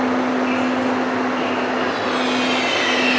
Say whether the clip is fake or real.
real